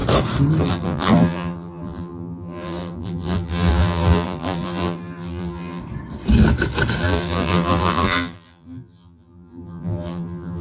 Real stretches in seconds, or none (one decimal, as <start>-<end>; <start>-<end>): 0.0-0.6; 5.8-7.0